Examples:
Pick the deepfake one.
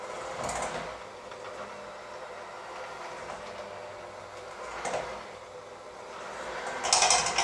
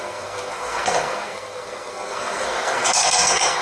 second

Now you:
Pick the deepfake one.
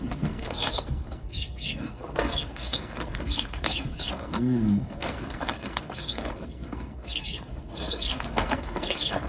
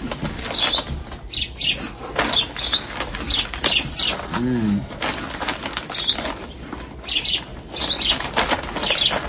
first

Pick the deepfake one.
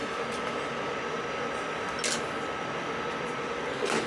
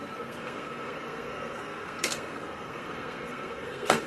second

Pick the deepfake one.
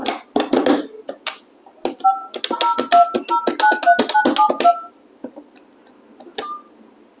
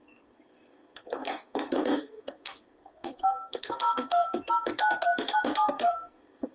second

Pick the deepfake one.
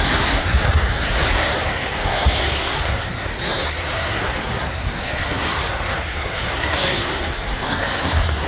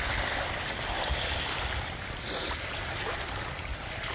first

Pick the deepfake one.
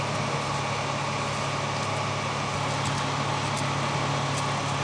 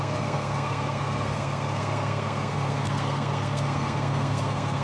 second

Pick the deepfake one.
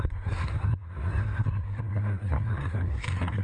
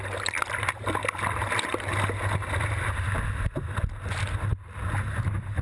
first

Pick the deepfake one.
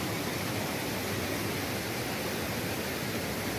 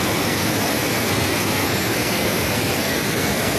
second